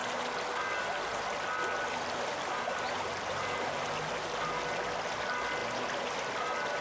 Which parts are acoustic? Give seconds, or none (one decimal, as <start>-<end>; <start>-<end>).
0.0-6.8